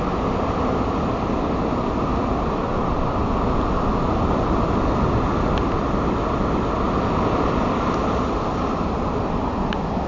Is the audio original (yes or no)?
yes